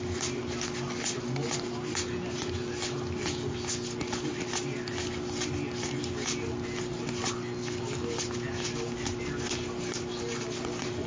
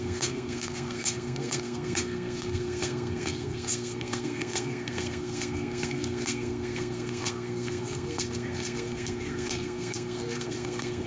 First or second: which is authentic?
first